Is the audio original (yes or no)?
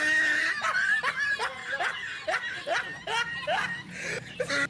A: yes